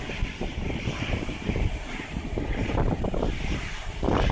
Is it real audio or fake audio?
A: real